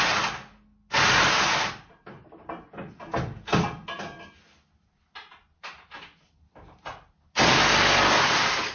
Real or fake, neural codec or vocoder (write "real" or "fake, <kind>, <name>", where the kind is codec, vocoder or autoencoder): real